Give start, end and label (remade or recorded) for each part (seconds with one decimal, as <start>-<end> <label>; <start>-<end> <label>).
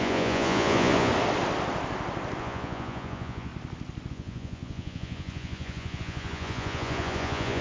0.0-1.1 remade; 1.1-2.4 recorded; 2.4-3.5 remade; 3.5-4.1 recorded; 4.1-7.6 remade